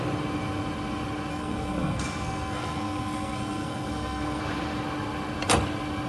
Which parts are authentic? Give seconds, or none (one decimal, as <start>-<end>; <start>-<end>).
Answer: 0.0-1.3; 4.4-6.1